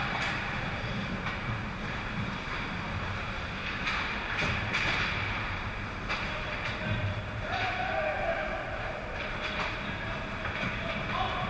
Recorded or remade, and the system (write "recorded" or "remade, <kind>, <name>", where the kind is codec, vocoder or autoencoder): remade, vocoder, BigVGAN v2